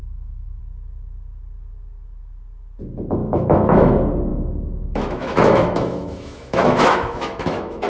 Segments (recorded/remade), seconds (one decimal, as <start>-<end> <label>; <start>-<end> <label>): 0.0-0.6 remade; 0.6-3.2 recorded; 3.2-3.9 remade; 3.9-4.3 recorded; 4.3-7.9 remade